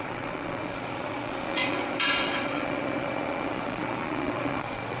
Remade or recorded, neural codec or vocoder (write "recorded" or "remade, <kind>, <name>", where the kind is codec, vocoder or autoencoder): remade, vocoder, Vocos